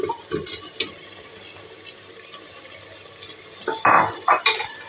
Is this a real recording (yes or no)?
yes